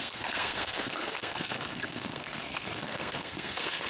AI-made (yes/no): yes